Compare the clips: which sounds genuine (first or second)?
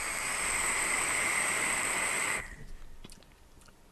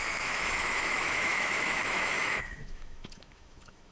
first